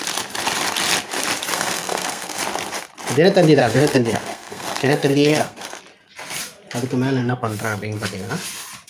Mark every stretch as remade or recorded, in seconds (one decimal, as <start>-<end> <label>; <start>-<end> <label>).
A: 0.0-1.5 recorded; 1.5-2.4 remade; 2.4-3.6 recorded; 3.6-5.8 remade; 5.8-7.2 recorded; 7.2-8.3 remade; 8.3-8.9 recorded